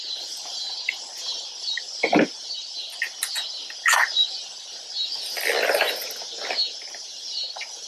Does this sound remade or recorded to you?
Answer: recorded